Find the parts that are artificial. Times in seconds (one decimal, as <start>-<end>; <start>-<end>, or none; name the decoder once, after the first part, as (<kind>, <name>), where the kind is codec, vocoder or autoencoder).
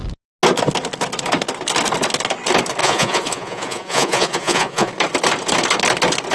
2.8-4.9 (vocoder, Vocos)